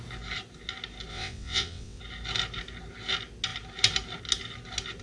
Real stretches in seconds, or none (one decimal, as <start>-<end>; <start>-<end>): 0.0-1.1; 2.0-5.0